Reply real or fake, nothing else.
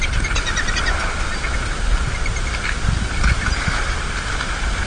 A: real